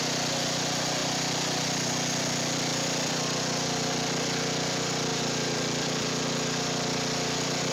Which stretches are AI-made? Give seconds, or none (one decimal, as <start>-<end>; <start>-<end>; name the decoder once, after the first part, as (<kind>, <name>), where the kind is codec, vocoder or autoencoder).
1.0-1.9 (vocoder, BigVGAN v2); 2.7-3.4; 5.1-6.1